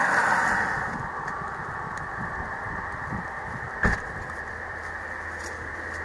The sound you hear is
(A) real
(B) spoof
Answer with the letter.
A